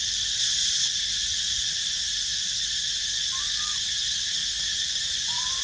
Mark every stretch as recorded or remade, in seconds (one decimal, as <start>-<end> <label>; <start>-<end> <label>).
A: 0.0-3.4 recorded; 3.4-4.4 remade; 4.4-4.9 recorded; 4.9-5.6 remade